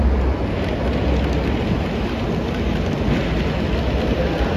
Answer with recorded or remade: recorded